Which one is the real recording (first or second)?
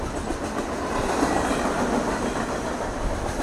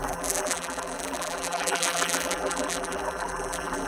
first